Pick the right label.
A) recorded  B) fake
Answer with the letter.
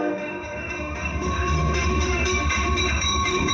B